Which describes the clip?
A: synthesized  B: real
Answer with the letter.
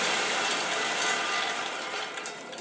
A